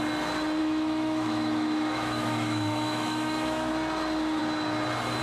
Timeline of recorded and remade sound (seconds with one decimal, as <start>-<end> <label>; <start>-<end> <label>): 0.0-0.6 recorded; 0.6-3.7 remade; 3.7-5.2 recorded